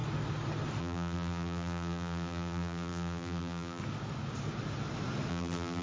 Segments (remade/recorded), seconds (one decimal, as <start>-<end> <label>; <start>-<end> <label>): 0.0-0.8 recorded; 0.8-3.8 remade; 3.8-5.3 recorded; 5.3-5.8 remade